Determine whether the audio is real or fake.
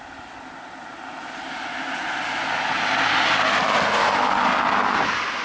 real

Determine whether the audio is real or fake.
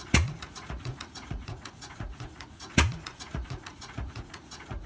fake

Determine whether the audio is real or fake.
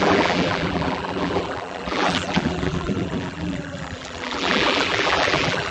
fake